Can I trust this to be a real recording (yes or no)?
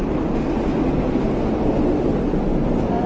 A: yes